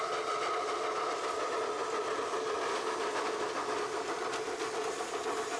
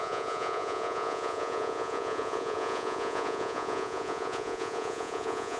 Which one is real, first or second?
first